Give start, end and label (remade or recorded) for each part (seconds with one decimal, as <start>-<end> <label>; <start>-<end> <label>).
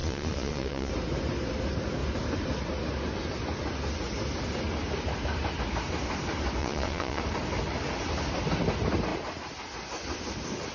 0.0-0.9 remade; 0.9-6.6 recorded; 6.6-7.2 remade; 7.2-10.7 recorded